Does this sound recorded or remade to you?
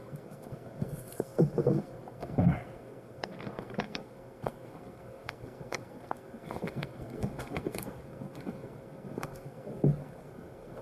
remade